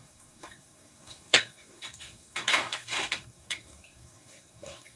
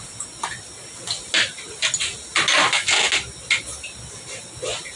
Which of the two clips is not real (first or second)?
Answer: first